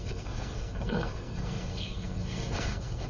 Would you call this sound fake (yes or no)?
yes